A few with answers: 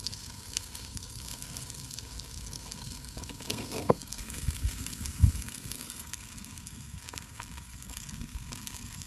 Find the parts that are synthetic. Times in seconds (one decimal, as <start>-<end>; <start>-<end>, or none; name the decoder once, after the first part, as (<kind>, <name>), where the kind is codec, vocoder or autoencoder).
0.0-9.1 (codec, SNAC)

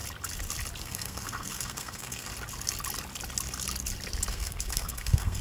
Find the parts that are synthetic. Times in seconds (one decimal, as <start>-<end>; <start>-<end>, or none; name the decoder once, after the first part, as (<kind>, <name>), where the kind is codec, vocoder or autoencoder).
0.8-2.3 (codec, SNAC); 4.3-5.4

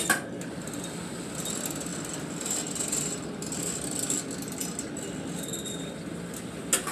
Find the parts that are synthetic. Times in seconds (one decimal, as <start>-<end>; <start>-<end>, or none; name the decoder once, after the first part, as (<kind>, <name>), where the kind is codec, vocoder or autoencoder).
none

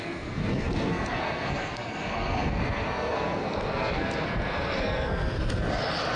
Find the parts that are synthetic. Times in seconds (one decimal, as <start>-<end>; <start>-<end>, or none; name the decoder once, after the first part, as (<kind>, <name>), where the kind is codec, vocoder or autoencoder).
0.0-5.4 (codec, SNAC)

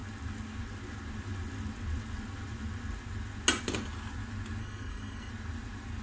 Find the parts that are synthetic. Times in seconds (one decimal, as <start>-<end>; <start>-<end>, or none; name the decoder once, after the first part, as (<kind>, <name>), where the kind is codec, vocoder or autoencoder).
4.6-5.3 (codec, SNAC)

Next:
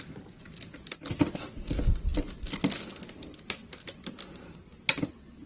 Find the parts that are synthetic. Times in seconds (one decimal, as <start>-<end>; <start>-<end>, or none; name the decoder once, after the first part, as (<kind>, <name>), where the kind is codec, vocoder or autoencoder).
none

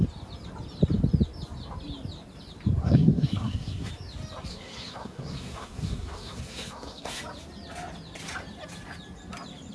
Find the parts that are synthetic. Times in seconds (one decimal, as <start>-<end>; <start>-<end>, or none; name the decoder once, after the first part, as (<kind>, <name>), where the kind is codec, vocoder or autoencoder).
2.8-3.9 (codec, SNAC); 4.5-7.2

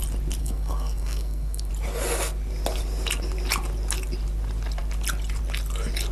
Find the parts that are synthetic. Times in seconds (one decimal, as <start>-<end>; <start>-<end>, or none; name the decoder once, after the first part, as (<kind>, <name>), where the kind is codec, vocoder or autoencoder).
0.4-1.7 (codec, SNAC)